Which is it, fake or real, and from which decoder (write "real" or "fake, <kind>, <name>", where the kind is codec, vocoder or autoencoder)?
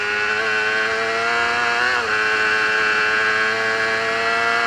real